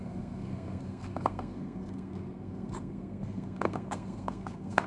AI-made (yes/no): yes